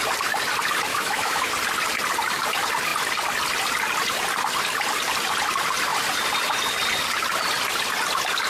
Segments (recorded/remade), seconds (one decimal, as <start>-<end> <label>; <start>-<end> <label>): 0.0-0.9 recorded; 0.9-1.5 remade; 1.5-8.5 recorded

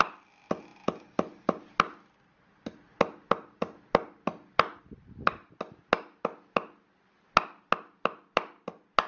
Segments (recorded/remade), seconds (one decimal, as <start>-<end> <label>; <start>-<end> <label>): 0.0-9.1 recorded

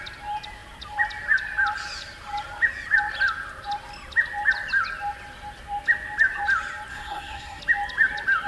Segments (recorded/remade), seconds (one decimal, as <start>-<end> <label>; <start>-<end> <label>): 0.0-6.9 recorded; 6.9-7.6 remade; 7.6-8.5 recorded

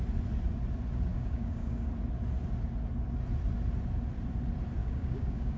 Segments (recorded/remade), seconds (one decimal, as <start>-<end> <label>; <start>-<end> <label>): 0.0-1.1 recorded; 1.1-1.9 remade; 1.9-4.8 recorded; 4.8-5.6 remade